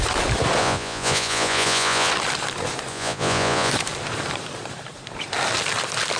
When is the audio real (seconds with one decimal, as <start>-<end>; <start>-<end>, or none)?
0.0-0.6; 2.1-2.9; 3.7-6.2

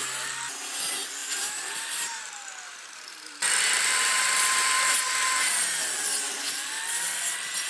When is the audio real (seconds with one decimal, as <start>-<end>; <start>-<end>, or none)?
0.0-1.2; 5.8-7.7

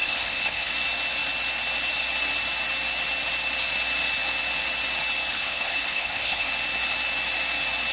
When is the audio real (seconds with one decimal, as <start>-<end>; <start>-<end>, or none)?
0.7-5.3; 6.5-7.9

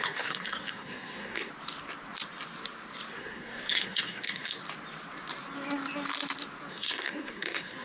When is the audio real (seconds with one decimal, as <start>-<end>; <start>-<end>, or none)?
1.5-3.1; 4.6-6.7

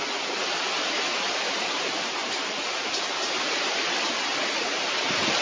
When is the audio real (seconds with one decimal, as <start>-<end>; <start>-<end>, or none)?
0.0-5.4